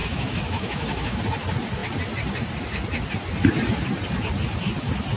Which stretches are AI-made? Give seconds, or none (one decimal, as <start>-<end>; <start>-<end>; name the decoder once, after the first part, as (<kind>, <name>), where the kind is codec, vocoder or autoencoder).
0.0-1.2 (autoencoder, DAC-VAE)

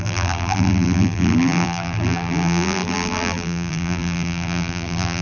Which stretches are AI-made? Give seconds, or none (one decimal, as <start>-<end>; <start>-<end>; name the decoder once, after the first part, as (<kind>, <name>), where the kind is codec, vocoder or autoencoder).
0.0-5.2 (vocoder, BigVGAN v2)

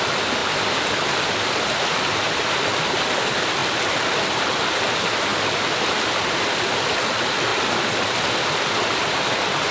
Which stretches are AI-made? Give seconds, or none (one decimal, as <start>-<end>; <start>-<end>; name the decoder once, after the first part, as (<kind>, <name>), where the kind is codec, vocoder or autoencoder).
none

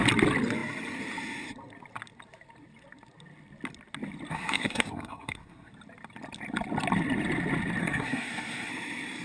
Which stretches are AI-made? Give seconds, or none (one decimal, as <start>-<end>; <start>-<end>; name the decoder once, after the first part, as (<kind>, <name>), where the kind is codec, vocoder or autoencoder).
4.3-5.7 (codec, SNAC); 7.8-8.7

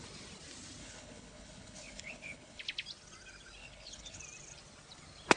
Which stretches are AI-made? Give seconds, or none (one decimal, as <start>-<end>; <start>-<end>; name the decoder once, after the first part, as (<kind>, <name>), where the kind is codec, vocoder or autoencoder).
0.8-2.6 (codec, HILCodec); 3.6-4.2

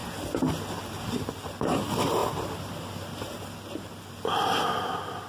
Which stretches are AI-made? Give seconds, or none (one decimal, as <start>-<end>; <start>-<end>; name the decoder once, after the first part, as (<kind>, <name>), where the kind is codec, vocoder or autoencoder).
none

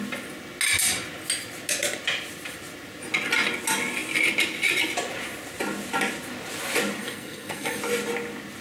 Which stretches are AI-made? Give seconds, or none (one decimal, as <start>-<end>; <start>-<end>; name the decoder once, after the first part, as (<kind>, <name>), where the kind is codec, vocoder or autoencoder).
7.0-7.8 (codec, SNAC)

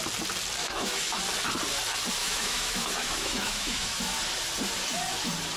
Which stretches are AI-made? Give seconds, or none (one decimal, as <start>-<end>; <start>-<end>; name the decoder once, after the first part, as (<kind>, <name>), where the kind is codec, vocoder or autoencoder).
0.6-1.2 (autoencoder, DAC-VAE); 2.2-4.0